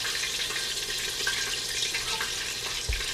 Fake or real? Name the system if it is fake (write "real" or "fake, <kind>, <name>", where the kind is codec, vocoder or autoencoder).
real